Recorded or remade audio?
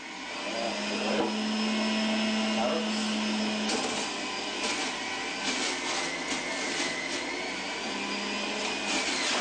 recorded